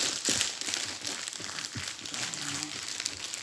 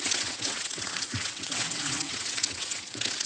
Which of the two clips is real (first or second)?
first